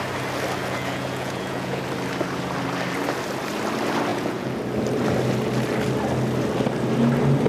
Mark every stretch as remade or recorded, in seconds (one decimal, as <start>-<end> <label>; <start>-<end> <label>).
0.0-0.6 recorded; 0.6-1.8 remade; 1.8-4.1 recorded; 4.1-4.6 remade; 4.6-7.5 recorded